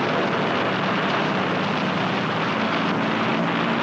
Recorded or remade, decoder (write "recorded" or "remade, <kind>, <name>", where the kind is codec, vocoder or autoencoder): recorded